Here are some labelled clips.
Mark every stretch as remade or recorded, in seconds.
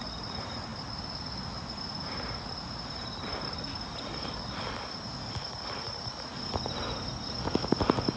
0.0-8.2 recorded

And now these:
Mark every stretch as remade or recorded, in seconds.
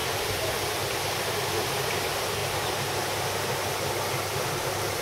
0.0-5.0 recorded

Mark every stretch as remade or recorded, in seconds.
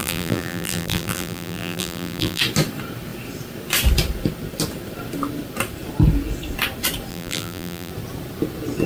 0.0-2.4 remade; 2.4-7.1 recorded; 7.1-7.9 remade; 7.9-8.9 recorded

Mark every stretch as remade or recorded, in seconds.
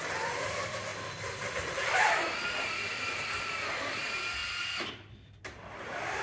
0.0-4.4 remade; 4.4-4.9 recorded; 4.9-6.2 remade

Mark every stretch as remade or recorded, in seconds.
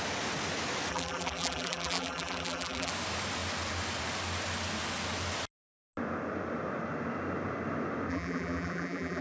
0.0-0.9 recorded; 0.9-2.9 remade; 2.9-8.1 recorded; 8.1-9.2 remade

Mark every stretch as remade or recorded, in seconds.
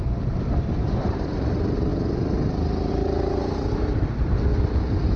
0.0-1.9 remade; 1.9-2.9 recorded; 2.9-4.5 remade; 4.5-5.2 recorded